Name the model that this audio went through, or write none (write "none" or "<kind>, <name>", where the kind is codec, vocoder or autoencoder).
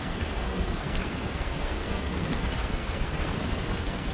codec, SNAC